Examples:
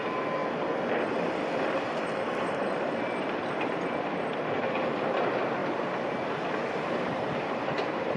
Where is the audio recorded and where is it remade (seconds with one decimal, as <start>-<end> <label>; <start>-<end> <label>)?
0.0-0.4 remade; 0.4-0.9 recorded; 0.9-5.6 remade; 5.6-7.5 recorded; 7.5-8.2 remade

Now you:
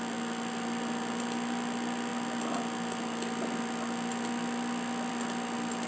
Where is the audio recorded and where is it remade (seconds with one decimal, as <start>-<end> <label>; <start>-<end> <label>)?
0.0-5.9 recorded

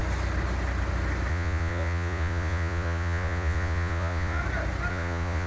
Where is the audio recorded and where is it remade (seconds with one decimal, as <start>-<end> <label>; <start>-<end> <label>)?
0.0-1.3 recorded; 1.3-4.4 remade; 4.4-4.9 recorded; 4.9-5.5 remade